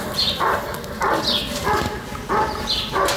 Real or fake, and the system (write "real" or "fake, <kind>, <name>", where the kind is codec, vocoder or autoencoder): real